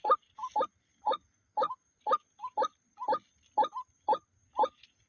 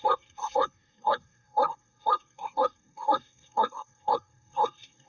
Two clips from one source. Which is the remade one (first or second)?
second